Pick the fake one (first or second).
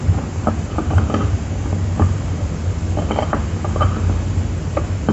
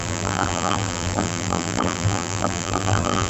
second